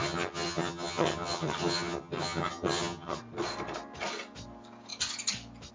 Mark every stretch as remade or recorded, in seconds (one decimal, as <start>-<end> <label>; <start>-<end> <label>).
0.0-3.2 remade; 3.2-5.7 recorded